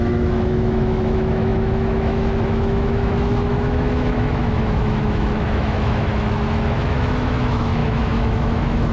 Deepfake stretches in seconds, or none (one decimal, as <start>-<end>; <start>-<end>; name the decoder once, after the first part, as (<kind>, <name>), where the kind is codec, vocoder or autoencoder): 0.0-8.9 (autoencoder, DAC-VAE)